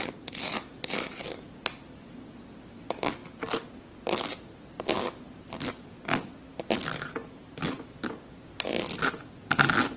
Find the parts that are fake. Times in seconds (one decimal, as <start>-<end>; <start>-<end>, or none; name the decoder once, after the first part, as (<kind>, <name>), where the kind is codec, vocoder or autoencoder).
none